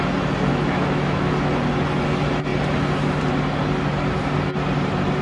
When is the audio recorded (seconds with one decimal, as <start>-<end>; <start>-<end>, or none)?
0.0-0.5; 1.3-5.2